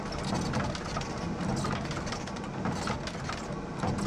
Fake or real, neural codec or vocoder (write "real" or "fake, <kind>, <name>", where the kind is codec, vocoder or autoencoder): real